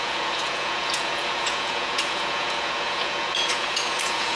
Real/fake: fake